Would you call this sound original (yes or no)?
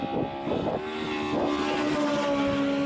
yes